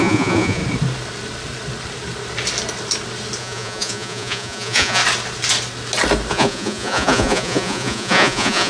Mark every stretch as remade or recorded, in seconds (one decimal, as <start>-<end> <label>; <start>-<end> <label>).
0.0-0.6 remade; 0.6-3.4 recorded; 3.4-5.0 remade; 5.0-6.3 recorded; 6.3-8.7 remade

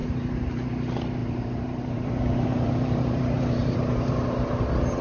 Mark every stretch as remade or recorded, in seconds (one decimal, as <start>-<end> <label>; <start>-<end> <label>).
0.0-0.7 remade; 0.7-1.2 recorded; 1.2-4.2 remade; 4.2-5.0 recorded

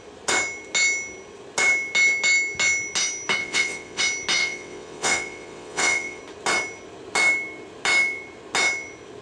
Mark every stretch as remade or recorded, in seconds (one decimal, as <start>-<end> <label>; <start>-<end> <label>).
0.0-3.4 recorded; 3.4-4.0 remade; 4.0-4.4 recorded; 4.4-6.2 remade; 6.2-9.2 recorded

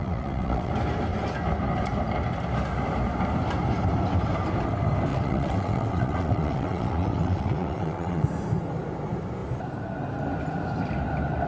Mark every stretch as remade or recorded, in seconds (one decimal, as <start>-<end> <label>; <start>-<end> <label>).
0.0-0.7 remade; 0.7-5.1 recorded; 5.1-8.3 remade; 8.3-11.5 recorded

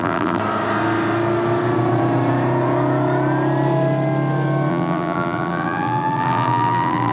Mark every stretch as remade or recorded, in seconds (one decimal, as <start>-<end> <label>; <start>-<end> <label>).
0.0-0.4 remade; 0.4-4.7 recorded; 4.7-7.1 remade